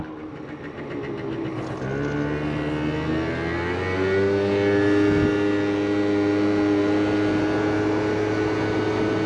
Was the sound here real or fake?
real